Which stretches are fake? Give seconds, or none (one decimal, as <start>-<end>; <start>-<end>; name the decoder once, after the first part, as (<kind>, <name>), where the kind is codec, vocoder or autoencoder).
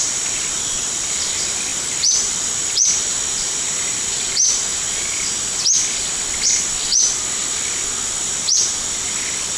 0.0-4.6 (vocoder, BigVGAN v2); 8.4-9.6